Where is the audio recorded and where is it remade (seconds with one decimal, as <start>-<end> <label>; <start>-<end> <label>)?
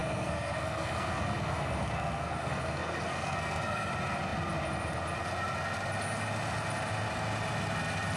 0.0-3.9 remade; 3.9-8.2 recorded